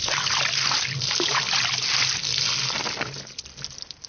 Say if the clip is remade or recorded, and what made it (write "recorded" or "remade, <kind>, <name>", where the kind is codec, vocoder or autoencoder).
recorded